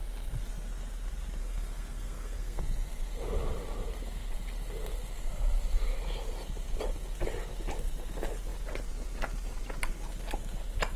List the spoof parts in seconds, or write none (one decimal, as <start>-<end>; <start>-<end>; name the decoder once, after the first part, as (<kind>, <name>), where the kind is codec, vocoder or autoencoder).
1.4-2.6 (codec, SNAC)

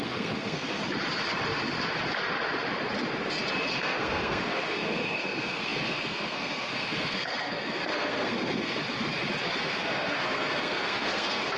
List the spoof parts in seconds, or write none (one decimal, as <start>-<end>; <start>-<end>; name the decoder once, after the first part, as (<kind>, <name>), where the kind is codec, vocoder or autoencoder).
0.0-0.8 (codec, SNAC); 3.7-8.8; 9.6-11.6

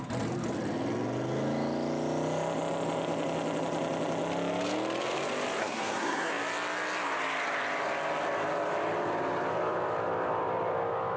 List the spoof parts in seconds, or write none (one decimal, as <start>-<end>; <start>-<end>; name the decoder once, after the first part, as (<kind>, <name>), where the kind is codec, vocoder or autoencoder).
5.6-6.3 (codec, SNAC)